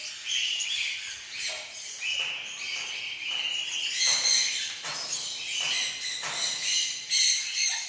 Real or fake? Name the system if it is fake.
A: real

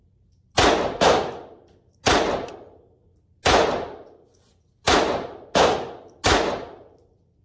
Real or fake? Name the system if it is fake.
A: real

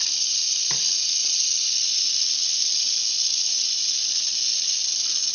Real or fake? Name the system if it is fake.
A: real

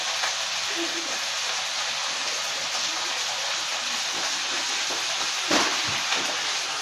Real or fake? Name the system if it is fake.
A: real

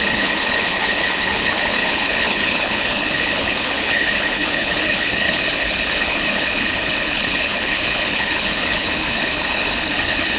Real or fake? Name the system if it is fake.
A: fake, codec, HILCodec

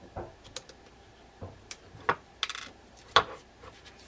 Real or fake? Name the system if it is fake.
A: real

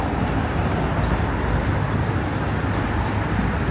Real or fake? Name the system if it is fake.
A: real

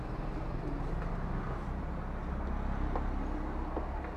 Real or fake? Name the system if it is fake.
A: real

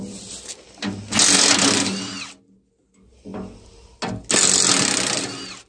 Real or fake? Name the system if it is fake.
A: real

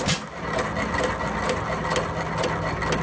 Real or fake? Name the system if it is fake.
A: real